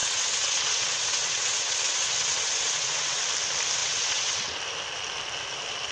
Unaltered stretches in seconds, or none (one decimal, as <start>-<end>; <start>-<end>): 3.2-3.8; 4.6-5.9